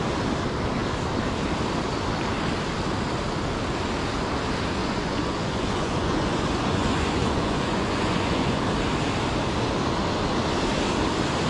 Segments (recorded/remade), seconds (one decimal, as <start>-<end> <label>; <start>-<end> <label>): 0.0-4.8 recorded; 4.8-8.6 remade; 8.6-11.5 recorded